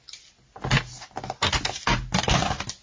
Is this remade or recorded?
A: recorded